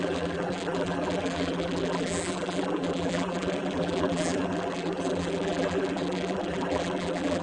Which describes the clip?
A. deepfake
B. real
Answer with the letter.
A